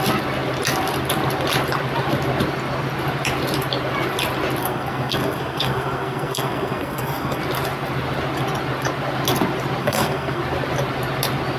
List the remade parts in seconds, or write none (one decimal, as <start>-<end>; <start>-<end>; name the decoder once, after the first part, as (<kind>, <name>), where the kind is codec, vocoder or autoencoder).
4.6-7.4 (codec, SNAC); 9.8-10.4